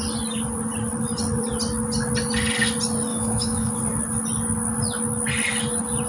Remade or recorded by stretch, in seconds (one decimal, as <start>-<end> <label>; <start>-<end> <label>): 0.0-3.1 recorded; 3.1-3.7 remade; 3.7-6.1 recorded